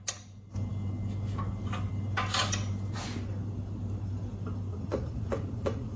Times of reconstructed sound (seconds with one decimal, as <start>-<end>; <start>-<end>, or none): 4.7-6.0

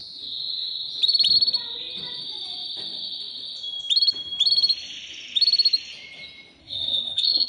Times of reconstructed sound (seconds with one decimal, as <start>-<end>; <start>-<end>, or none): 6.6-7.5

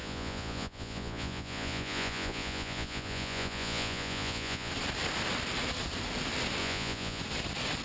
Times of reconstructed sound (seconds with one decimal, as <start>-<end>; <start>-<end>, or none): 0.0-4.7; 6.6-7.2

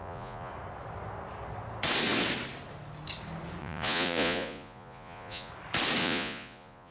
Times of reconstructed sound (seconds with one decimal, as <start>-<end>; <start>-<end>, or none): 0.0-0.5; 3.6-5.5; 6.0-6.9

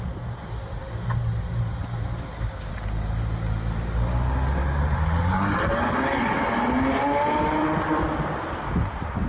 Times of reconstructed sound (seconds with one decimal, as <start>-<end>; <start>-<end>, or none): none